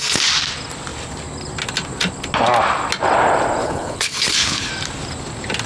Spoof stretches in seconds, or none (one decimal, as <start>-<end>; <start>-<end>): 3.6-4.7